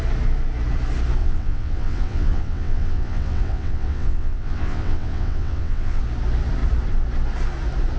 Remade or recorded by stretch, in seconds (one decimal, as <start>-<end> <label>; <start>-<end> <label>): 0.0-1.2 recorded; 1.2-6.0 remade; 6.0-8.0 recorded

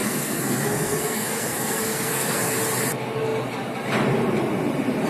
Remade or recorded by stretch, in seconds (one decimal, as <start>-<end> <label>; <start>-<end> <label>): 0.0-2.6 remade; 2.6-5.1 recorded

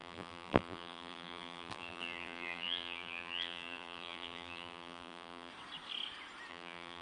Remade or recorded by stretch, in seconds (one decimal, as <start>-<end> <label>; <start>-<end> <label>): 0.0-5.5 remade; 5.5-6.5 recorded; 6.5-7.0 remade

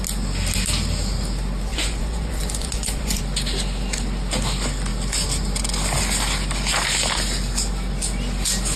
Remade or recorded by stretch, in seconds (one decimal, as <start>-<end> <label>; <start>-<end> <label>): 0.0-1.7 recorded; 1.7-3.2 remade; 3.2-8.8 recorded

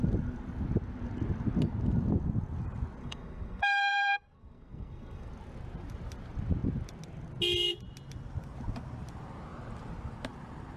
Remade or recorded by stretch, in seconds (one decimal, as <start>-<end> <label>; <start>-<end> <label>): 0.0-3.0 recorded; 3.0-5.3 remade; 5.3-10.8 recorded

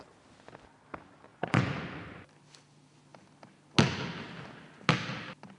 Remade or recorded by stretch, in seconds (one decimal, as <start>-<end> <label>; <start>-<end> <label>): 0.0-1.3 recorded; 1.3-2.3 remade; 2.3-5.6 recorded